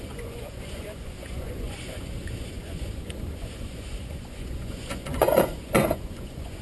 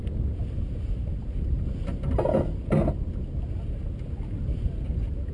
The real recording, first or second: second